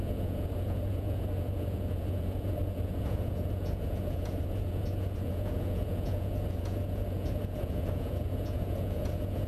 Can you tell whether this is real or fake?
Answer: fake